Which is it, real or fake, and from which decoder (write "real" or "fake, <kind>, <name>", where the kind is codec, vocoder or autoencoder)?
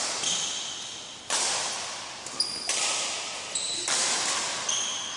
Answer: real